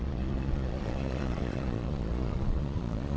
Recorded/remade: remade